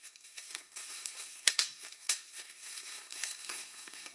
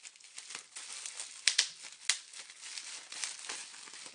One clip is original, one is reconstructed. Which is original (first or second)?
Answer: second